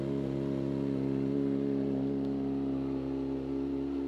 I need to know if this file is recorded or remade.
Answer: recorded